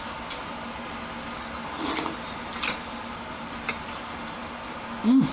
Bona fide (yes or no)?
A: yes